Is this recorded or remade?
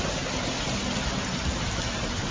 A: recorded